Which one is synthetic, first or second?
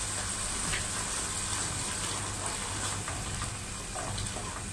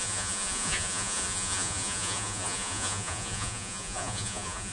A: second